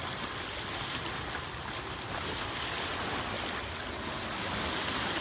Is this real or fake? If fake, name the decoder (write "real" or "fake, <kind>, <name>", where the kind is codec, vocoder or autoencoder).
real